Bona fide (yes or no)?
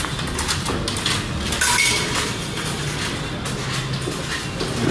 yes